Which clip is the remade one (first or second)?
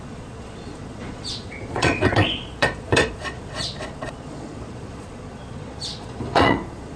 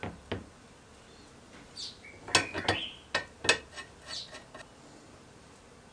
first